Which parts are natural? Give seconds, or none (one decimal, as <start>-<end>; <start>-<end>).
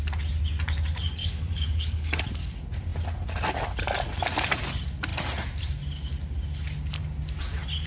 0.0-1.2; 2.2-7.9